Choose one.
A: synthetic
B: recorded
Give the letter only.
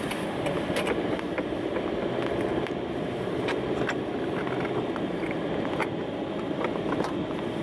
B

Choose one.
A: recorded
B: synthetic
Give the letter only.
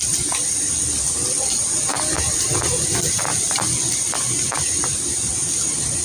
A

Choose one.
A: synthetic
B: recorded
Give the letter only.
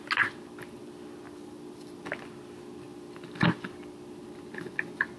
B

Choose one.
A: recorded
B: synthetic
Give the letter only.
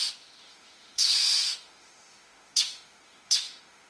B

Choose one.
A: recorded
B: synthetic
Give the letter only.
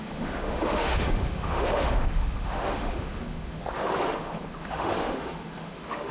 B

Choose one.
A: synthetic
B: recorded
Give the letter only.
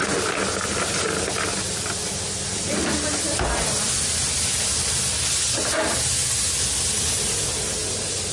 B